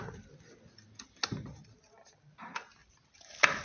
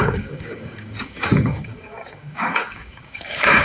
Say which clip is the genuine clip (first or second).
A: first